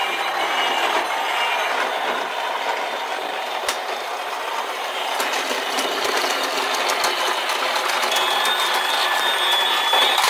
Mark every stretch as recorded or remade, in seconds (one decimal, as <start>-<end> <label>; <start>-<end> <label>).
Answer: 0.0-3.2 recorded; 3.2-6.5 remade; 6.5-10.3 recorded

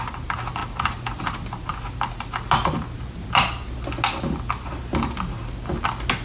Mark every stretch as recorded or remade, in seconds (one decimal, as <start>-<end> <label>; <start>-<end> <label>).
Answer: 0.0-6.2 recorded

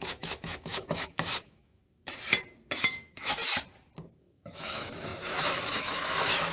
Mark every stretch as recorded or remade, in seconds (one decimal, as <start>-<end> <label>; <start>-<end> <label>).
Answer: 0.0-1.8 remade; 1.8-2.8 recorded; 2.8-3.4 remade; 3.4-4.2 recorded; 4.2-6.5 remade